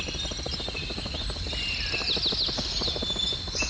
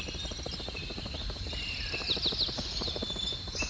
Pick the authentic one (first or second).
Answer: first